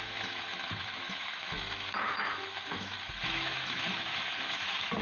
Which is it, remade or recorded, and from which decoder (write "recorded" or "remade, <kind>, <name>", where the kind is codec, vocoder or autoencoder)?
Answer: remade, autoencoder, DAC-VAE